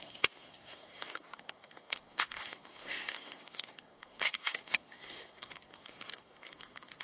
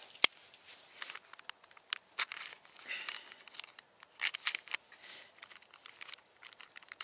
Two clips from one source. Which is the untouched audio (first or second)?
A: second